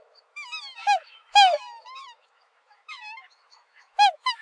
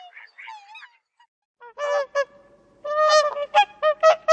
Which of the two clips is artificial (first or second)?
first